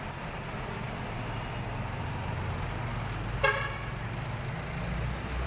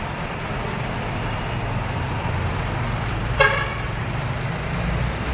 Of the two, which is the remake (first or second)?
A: second